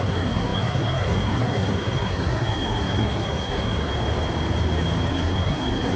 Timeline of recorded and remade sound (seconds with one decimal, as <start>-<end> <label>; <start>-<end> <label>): 0.0-3.9 remade; 3.9-5.1 recorded; 5.1-6.0 remade